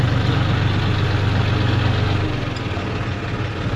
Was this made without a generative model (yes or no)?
yes